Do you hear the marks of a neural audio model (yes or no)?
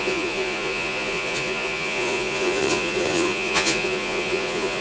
yes